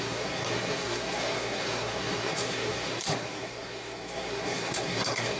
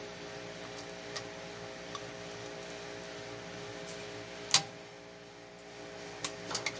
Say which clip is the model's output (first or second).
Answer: first